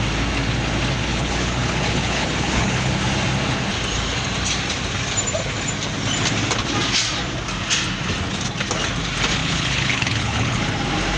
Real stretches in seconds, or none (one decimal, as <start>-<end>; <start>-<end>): 0.0-1.1; 2.9-9.4; 10.6-11.2